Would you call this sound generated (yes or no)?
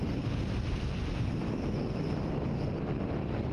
no